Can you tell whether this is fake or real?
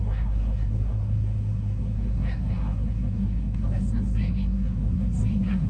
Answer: fake